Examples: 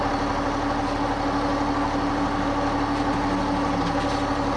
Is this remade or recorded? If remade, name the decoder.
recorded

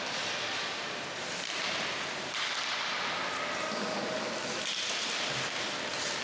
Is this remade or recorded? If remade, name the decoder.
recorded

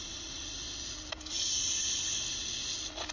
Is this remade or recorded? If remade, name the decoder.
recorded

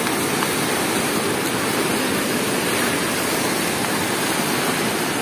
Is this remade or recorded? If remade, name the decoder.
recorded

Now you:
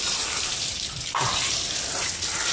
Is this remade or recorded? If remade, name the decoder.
remade, vocoder, BigVGAN v2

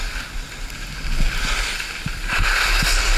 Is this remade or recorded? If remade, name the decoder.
recorded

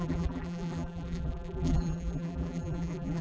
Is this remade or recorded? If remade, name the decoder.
remade, vocoder, BigVGAN v2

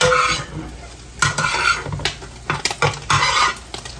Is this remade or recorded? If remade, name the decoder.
recorded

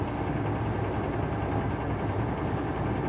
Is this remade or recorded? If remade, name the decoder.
recorded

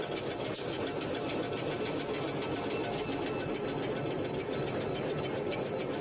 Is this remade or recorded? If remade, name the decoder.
recorded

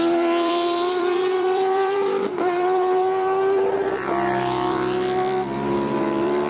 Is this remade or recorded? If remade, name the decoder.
remade, vocoder, BigVGAN v2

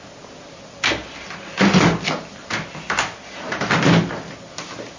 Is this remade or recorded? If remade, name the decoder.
recorded